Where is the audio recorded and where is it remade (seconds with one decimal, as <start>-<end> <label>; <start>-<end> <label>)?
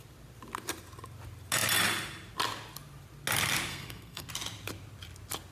0.0-3.7 recorded; 3.7-4.3 remade; 4.3-5.5 recorded